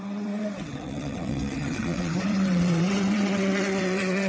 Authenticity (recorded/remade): remade